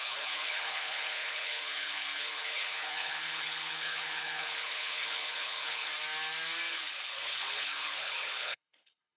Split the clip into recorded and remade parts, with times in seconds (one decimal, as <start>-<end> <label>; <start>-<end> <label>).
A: 0.0-5.9 remade; 5.9-6.7 recorded; 6.7-9.2 remade

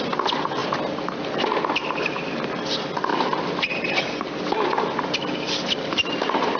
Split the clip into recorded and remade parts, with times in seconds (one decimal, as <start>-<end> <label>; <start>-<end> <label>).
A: 0.0-3.1 recorded; 3.1-4.0 remade; 4.0-6.6 recorded

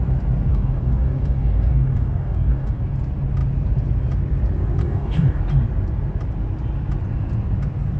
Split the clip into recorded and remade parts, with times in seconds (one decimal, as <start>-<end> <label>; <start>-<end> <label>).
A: 0.0-0.5 recorded; 0.5-2.8 remade; 2.8-4.8 recorded; 4.8-5.4 remade; 5.4-8.0 recorded

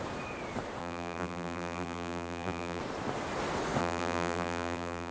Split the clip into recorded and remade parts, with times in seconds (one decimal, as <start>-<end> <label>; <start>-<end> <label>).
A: 0.0-0.8 recorded; 0.8-2.8 remade; 2.8-3.8 recorded; 3.8-5.1 remade

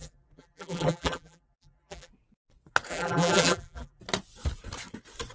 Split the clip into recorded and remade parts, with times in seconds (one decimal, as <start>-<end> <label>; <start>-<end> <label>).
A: 0.0-2.1 remade; 2.1-2.9 recorded; 2.9-4.0 remade; 4.0-5.3 recorded

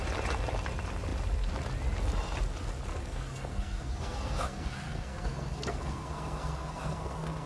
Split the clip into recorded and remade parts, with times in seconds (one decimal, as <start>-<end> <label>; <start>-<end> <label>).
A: 0.0-2.9 recorded; 2.9-7.5 remade

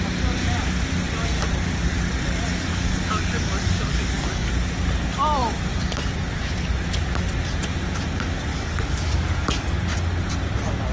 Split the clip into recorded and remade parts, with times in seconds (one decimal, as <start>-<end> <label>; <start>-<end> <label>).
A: 0.0-2.7 recorded; 2.7-4.5 remade; 4.5-8.5 recorded; 8.5-9.8 remade; 9.8-10.9 recorded